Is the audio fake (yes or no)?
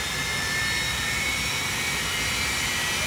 yes